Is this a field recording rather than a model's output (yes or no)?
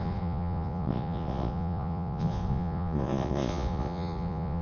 no